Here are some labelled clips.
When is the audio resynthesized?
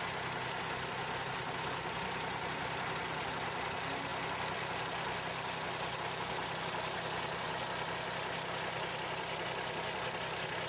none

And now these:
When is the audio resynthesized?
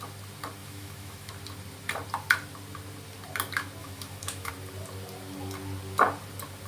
0.6-1.3; 3.8-4.5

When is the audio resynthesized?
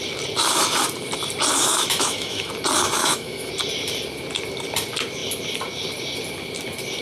1.7-2.5; 3.0-3.5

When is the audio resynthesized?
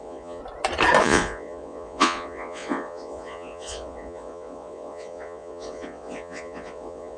0.0-0.4; 1.0-7.2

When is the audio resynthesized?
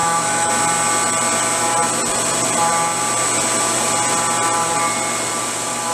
0.0-0.5